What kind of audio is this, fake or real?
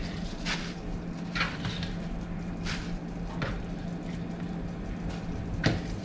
real